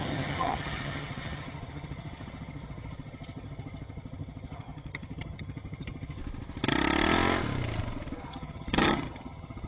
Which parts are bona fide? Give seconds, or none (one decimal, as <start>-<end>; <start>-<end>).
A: 6.2-8.3